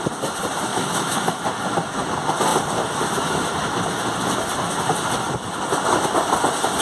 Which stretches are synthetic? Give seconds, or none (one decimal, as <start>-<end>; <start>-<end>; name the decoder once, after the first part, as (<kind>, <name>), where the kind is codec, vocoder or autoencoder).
0.7-1.4 (autoencoder, DAC-VAE)